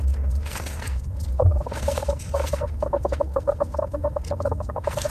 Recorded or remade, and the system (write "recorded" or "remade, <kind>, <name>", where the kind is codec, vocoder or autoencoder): remade, codec, SNAC